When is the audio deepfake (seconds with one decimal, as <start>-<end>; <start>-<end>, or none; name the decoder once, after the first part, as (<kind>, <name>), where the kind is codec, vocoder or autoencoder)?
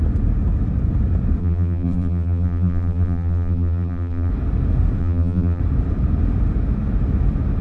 1.4-4.3 (vocoder, BigVGAN v2); 5.0-5.6